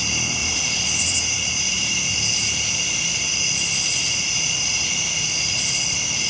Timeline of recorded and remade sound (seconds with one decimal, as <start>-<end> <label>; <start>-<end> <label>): 0.0-0.4 recorded; 0.4-4.2 remade; 4.2-6.3 recorded